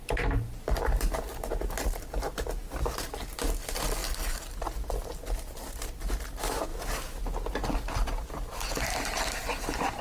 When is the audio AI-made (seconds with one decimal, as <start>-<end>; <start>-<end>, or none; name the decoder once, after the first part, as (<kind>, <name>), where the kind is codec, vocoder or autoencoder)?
none